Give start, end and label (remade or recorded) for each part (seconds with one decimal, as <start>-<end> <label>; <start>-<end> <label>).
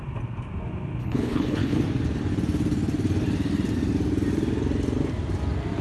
0.0-1.0 recorded; 1.0-1.8 remade; 1.8-5.8 recorded